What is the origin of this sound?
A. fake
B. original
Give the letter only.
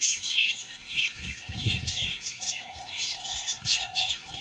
A